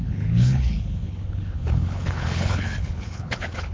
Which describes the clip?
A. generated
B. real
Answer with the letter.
A